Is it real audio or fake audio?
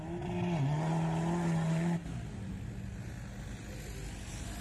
real